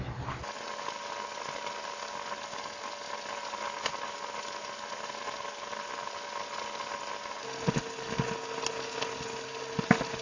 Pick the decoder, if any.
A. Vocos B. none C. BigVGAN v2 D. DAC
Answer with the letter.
B